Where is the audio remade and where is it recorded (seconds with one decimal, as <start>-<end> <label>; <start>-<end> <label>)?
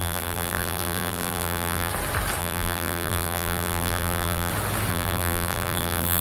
0.0-1.9 remade; 1.9-2.4 recorded; 2.4-4.5 remade; 4.5-4.9 recorded; 4.9-6.2 remade